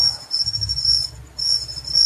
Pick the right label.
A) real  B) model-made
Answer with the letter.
A